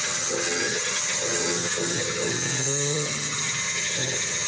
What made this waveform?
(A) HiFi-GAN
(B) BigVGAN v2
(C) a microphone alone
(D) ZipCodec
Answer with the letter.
A